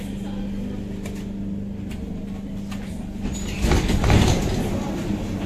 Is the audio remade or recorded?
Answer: recorded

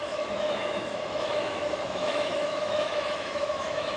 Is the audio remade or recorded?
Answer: remade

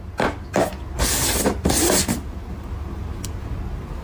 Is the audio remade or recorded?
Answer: recorded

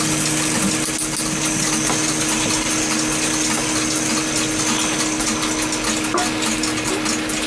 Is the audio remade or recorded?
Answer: recorded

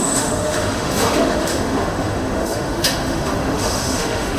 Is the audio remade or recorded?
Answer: remade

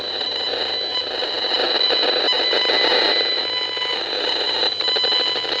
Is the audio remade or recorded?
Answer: recorded